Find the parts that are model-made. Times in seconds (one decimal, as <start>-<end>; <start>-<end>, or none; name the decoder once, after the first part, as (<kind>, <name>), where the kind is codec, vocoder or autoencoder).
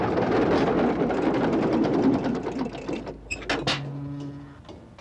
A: 1.8-3.4 (vocoder, BigVGAN v2)